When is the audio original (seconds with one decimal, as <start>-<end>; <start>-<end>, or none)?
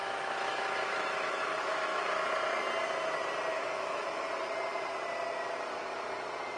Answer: 2.1-3.5; 4.2-6.6